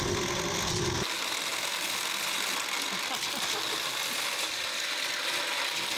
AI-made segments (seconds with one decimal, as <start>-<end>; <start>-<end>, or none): none